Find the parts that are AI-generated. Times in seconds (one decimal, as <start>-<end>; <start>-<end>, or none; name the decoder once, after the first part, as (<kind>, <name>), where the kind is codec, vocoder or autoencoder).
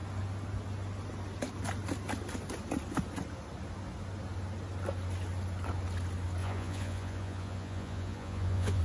6.4-8.8 (vocoder, Vocos)